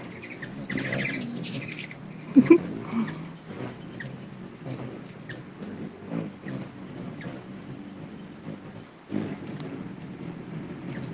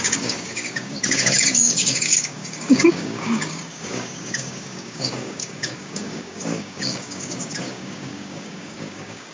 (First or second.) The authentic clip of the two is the first